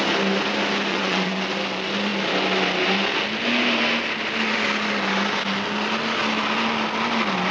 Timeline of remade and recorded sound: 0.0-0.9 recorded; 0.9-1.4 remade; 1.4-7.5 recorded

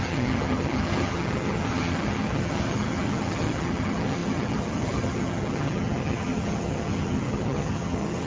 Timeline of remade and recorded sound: 0.0-8.3 remade